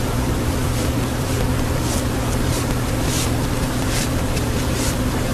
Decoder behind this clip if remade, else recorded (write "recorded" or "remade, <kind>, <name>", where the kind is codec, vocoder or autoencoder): remade, vocoder, BigVGAN v2